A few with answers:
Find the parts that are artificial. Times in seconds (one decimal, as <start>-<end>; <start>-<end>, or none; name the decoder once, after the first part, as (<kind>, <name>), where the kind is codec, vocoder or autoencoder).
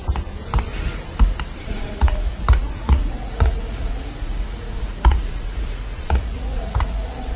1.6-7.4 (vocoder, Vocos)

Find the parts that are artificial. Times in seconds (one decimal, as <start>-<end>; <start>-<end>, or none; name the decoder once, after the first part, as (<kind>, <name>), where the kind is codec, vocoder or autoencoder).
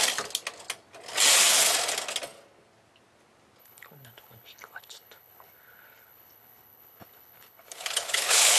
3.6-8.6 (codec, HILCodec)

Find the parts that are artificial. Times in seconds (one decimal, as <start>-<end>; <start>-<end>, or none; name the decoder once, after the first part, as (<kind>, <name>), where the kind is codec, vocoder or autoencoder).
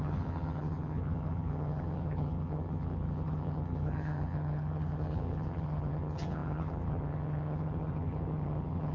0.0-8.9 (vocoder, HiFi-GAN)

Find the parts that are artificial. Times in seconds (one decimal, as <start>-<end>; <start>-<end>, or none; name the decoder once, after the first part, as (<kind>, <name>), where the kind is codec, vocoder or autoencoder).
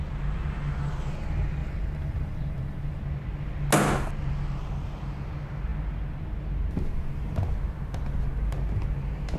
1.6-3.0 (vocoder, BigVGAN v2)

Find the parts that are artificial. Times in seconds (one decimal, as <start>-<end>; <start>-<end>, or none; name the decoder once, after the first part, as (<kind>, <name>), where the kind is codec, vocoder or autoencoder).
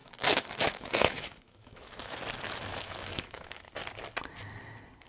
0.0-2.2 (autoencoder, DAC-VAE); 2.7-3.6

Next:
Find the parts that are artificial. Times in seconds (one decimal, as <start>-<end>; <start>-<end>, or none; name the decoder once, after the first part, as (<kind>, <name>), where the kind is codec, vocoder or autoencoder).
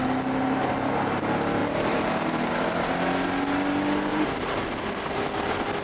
1.6-2.9 (vocoder, BigVGAN v2); 4.1-4.8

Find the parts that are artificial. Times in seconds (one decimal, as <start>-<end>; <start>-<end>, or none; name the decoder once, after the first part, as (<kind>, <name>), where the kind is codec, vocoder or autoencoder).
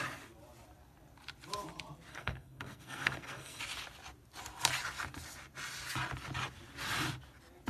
2.1-3.6 (codec, SNAC)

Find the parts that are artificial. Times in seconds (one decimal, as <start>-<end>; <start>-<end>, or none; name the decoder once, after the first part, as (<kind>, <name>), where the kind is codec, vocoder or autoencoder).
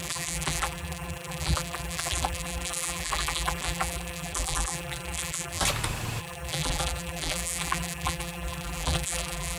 0.0-5.6 (vocoder, BigVGAN v2); 6.2-9.6